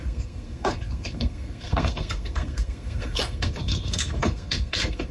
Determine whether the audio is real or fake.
fake